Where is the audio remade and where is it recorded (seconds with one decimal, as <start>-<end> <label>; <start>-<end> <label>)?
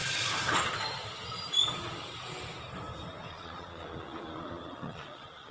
0.0-3.3 recorded; 3.3-5.5 remade